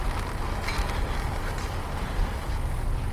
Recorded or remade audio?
recorded